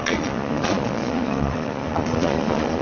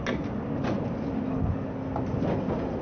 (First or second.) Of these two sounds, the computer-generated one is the first